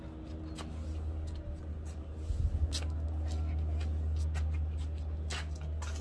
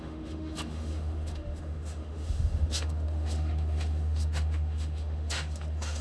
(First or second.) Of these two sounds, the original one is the first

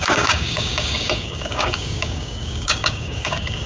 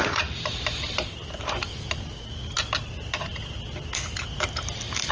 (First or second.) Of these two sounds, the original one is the second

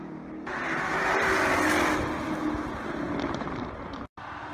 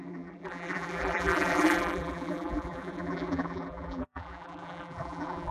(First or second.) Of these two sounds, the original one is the first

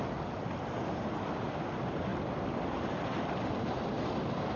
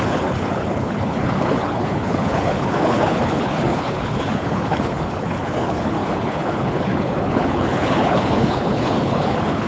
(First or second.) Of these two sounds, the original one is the first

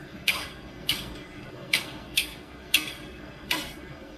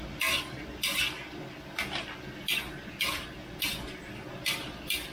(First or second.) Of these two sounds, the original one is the second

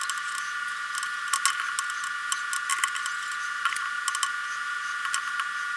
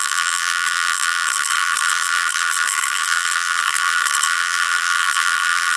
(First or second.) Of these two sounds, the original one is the first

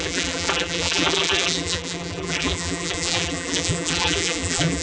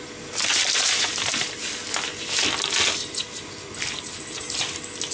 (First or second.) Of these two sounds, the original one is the second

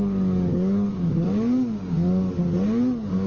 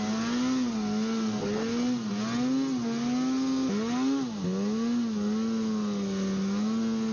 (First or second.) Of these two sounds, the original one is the second